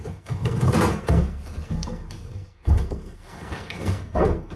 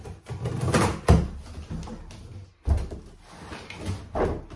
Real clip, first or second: second